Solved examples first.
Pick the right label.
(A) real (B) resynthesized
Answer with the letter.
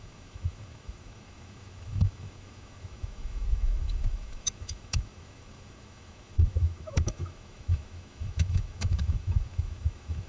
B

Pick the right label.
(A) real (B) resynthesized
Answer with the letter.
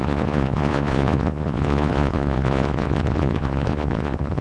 B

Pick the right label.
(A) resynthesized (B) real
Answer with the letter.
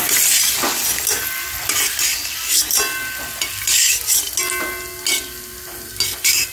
B